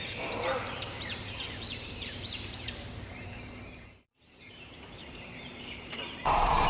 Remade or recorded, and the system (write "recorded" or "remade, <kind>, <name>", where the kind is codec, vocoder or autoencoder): remade, vocoder, BigVGAN v2